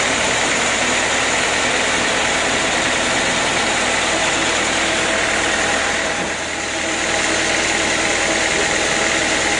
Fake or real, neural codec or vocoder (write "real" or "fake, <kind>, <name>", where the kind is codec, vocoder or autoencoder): real